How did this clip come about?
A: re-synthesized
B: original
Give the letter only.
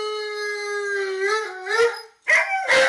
B